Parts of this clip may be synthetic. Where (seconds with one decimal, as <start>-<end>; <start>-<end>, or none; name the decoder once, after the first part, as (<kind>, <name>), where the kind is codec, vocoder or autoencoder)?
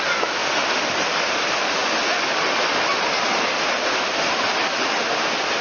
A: 0.0-0.4 (vocoder, BigVGAN v2); 1.0-1.8